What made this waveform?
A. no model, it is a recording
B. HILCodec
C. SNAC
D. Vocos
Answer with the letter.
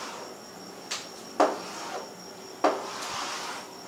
A